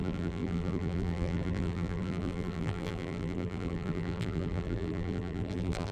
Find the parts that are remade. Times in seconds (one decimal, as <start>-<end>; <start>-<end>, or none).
0.0-5.9